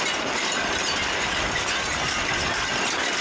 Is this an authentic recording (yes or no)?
no